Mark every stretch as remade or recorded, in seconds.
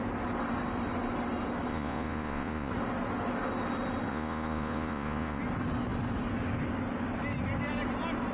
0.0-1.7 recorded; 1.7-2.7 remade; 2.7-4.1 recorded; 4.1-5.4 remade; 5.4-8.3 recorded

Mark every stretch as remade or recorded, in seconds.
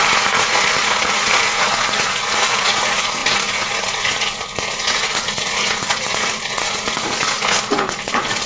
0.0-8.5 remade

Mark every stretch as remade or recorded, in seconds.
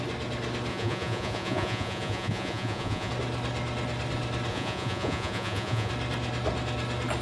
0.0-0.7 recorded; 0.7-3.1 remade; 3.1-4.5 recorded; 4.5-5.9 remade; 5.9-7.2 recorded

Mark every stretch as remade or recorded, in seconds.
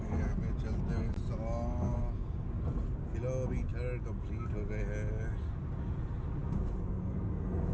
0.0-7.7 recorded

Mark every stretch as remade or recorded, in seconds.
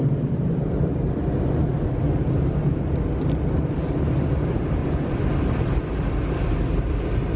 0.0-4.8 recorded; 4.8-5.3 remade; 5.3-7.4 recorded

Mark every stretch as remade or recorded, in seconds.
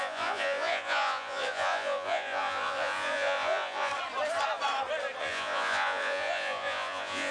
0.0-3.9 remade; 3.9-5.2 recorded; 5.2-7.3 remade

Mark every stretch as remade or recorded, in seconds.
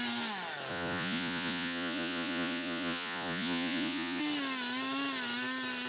0.0-0.7 recorded; 0.7-4.2 remade; 4.2-5.9 recorded